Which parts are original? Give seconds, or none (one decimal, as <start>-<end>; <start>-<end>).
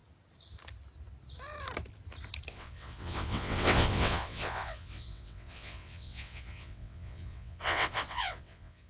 0.0-2.5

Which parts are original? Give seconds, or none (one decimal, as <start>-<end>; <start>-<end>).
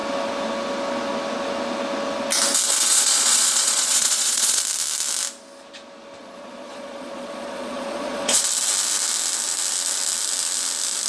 0.0-2.9; 4.6-6.2; 8.4-11.1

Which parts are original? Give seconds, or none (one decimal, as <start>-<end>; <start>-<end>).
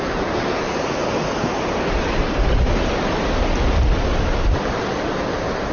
1.0-4.0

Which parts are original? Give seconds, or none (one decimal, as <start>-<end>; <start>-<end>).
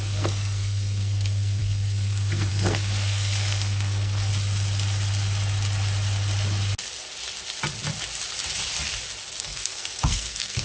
4.3-9.4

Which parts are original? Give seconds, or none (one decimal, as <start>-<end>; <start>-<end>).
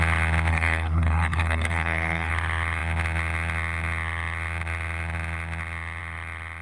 0.0-0.5; 2.3-6.6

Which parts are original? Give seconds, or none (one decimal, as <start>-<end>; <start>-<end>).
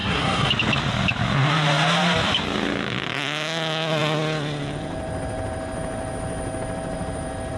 0.5-7.6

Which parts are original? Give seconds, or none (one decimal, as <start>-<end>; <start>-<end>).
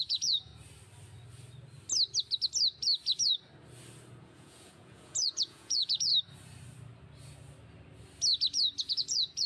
0.5-4.2; 6.1-8.8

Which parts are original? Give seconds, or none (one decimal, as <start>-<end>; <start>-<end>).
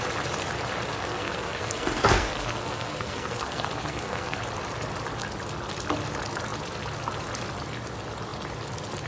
0.0-0.9; 4.4-9.1